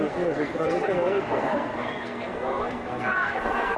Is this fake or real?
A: fake